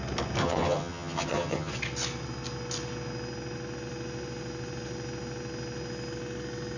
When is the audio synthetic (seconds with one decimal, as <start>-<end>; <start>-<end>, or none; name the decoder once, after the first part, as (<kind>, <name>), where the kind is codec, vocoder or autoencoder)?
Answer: 0.4-1.7 (vocoder, HiFi-GAN)